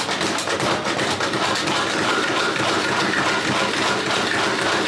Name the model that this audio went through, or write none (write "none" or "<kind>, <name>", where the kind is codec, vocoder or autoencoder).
none